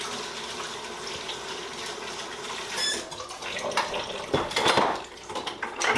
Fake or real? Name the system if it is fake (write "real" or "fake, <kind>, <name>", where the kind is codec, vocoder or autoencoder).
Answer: fake, vocoder, BigVGAN v2